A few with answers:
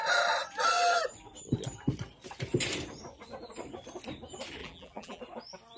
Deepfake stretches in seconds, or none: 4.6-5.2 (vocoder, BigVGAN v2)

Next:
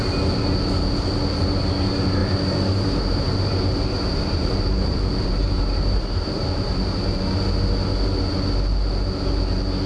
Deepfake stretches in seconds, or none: 2.2-7.2 (vocoder, BigVGAN v2)

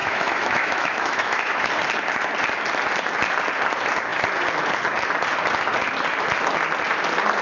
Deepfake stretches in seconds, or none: 0.0-1.7 (autoencoder, DAC-VAE)

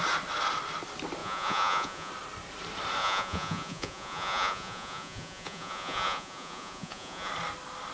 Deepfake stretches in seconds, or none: 1.2-2.1 (vocoder, Vocos); 3.0-7.3